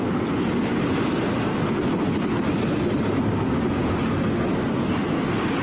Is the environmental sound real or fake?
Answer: real